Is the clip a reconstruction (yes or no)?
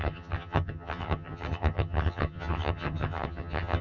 yes